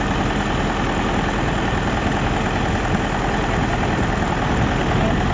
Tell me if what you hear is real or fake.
real